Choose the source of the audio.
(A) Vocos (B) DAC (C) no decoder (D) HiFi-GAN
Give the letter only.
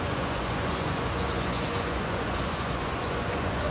A